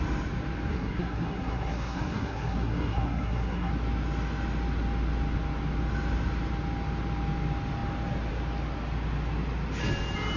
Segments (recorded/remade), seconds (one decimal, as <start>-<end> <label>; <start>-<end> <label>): 0.0-0.7 recorded; 0.7-3.7 remade; 3.7-10.4 recorded